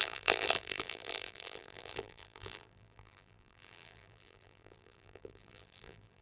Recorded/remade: remade